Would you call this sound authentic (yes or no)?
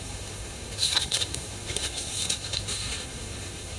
no